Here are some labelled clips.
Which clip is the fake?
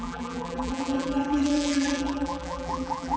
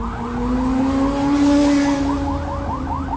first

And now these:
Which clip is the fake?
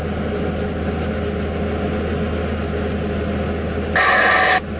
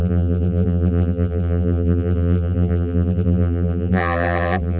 second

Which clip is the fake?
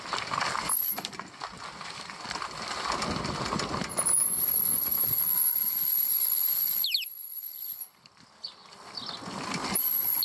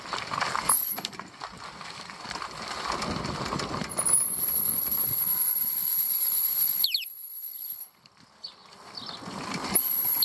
second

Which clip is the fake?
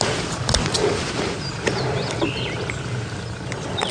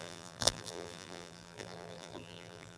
second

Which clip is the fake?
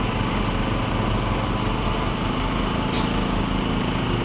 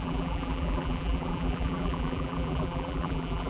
second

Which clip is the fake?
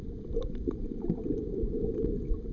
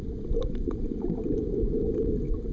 first